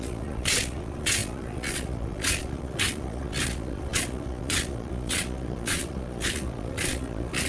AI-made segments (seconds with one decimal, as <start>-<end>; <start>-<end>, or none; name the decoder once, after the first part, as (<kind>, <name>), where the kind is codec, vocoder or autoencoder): 0.0-7.5 (vocoder, Vocos)